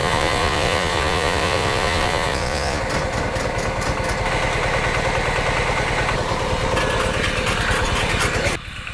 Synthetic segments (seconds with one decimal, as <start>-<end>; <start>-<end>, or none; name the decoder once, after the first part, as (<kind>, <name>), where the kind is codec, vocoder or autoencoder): 0.0-2.8 (vocoder, Vocos)